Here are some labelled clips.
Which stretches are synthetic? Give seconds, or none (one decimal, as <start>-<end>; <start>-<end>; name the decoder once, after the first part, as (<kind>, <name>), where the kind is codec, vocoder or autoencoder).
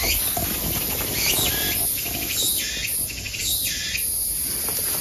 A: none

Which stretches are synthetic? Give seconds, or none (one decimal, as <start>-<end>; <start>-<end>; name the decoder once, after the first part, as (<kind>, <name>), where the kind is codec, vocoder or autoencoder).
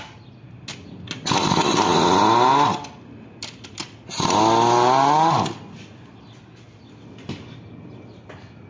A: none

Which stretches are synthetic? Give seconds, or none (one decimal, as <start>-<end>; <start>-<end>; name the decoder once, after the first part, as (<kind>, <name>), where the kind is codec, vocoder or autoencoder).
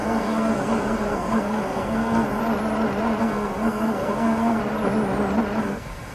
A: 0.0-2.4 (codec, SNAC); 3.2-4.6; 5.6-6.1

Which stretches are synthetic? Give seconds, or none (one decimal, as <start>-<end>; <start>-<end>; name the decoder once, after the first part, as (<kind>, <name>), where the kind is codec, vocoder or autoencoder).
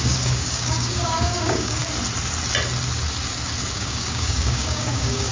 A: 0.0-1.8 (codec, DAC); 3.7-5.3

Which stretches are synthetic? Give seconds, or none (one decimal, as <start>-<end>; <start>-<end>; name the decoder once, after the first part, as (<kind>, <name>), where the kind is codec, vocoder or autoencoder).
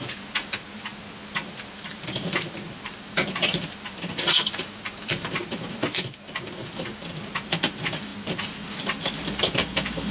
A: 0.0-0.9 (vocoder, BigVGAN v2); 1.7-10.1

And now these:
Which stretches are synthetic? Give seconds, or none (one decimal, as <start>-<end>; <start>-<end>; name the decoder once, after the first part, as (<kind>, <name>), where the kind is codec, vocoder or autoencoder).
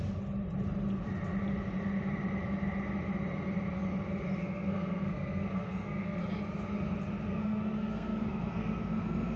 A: 4.4-6.2 (codec, SNAC); 7.3-9.4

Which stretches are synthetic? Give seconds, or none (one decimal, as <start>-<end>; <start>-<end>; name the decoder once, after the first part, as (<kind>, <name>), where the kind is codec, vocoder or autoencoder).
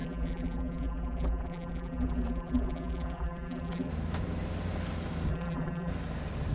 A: 0.0-3.9 (vocoder, BigVGAN v2); 5.3-5.9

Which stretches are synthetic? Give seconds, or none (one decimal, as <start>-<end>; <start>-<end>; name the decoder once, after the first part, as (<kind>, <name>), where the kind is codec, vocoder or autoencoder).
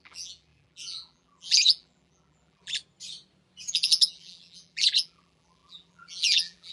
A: 0.0-2.8 (vocoder, BigVGAN v2); 3.7-6.7